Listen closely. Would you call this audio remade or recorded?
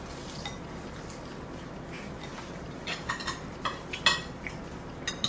recorded